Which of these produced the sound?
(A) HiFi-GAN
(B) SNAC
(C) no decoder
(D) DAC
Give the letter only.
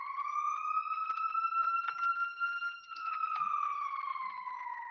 C